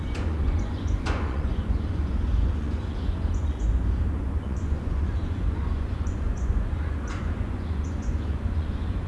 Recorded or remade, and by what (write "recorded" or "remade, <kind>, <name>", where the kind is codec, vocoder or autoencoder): remade, vocoder, Vocos